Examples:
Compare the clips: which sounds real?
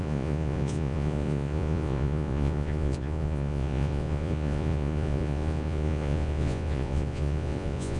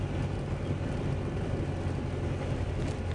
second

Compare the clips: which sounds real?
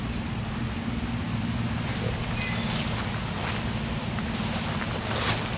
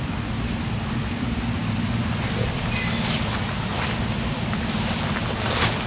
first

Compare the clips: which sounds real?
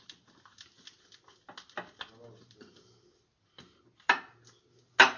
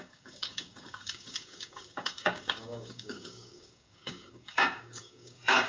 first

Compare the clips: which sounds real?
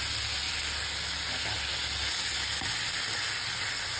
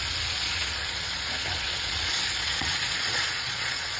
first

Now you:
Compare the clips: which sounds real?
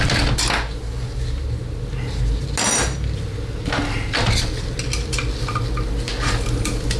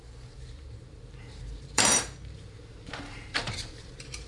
first